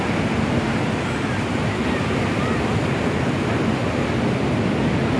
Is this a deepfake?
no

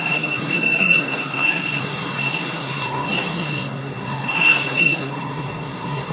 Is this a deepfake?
yes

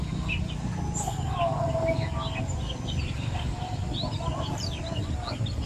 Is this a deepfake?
no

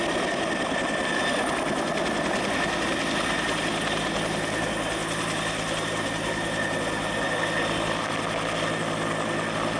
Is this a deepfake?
no